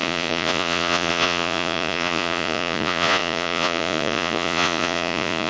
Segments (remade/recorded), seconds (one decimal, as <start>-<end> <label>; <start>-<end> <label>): 0.0-5.5 remade